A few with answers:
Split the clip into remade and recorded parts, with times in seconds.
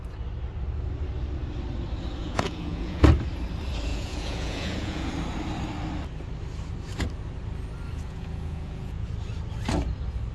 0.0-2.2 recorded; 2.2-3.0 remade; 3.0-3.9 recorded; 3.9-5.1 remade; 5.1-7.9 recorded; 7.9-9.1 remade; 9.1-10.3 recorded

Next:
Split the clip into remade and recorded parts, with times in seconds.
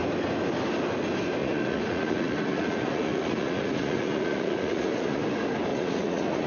0.0-1.4 recorded; 1.4-5.2 remade; 5.2-5.7 recorded; 5.7-6.5 remade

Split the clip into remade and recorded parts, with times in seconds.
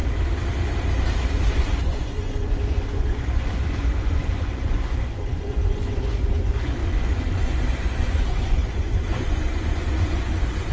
0.0-1.3 recorded; 1.3-10.7 remade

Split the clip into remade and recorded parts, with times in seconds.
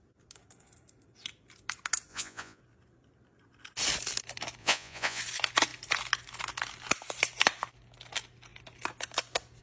0.0-2.1 recorded; 2.1-2.6 remade; 2.6-4.6 recorded; 4.6-5.2 remade; 5.2-9.6 recorded